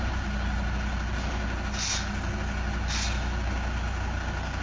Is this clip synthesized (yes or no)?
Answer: no